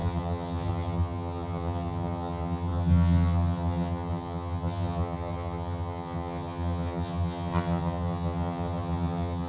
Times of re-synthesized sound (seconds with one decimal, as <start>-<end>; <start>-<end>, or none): 0.0-9.5